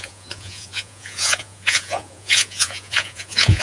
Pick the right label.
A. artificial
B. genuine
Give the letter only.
A